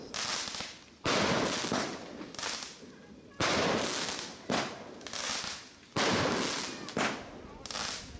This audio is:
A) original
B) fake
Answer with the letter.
A